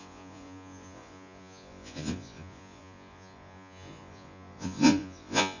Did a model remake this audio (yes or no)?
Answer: yes